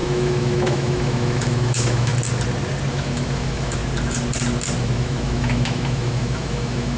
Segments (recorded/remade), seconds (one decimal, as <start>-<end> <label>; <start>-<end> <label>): 0.0-2.1 remade; 2.1-2.9 recorded; 2.9-3.8 remade; 3.8-4.8 recorded; 4.8-7.0 remade